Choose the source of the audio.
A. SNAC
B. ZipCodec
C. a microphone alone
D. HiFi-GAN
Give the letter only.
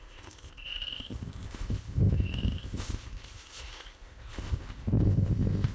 B